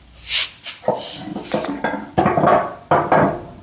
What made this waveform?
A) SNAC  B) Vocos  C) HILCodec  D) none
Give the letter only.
D